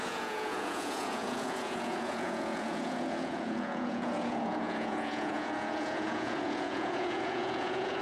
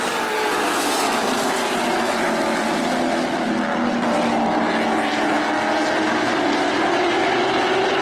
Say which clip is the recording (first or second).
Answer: second